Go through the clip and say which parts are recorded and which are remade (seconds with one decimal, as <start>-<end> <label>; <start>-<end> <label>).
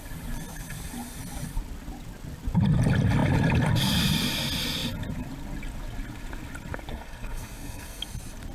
0.0-6.9 recorded; 6.9-8.0 remade; 8.0-8.5 recorded